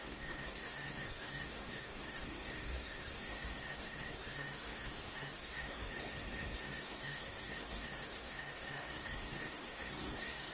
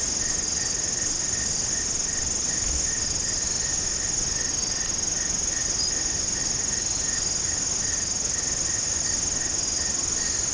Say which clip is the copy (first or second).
first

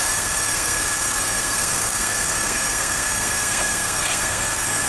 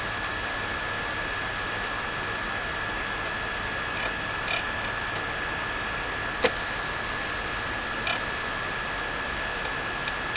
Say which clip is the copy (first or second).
first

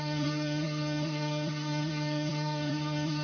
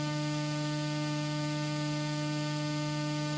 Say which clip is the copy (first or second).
first